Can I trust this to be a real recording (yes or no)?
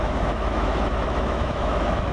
no